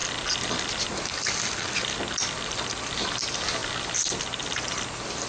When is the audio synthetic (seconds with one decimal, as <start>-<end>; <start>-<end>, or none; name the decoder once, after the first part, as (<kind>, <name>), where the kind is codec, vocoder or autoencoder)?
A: none